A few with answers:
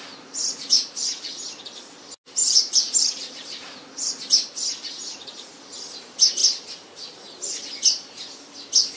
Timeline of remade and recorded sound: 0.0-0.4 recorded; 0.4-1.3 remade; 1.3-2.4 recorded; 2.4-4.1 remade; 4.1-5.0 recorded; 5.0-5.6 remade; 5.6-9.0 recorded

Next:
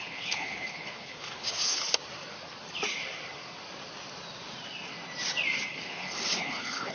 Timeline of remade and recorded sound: 0.0-1.8 remade; 1.8-5.7 recorded; 5.7-6.9 remade